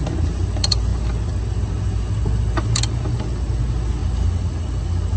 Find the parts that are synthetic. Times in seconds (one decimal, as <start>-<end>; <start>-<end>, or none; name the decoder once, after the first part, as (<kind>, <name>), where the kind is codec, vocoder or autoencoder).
none